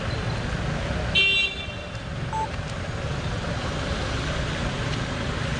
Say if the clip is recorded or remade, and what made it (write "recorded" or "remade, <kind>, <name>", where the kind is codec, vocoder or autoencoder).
recorded